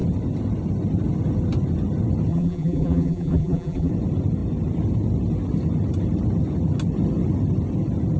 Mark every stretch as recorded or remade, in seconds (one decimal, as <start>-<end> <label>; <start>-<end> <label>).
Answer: 0.0-2.3 recorded; 2.3-3.9 remade; 3.9-8.2 recorded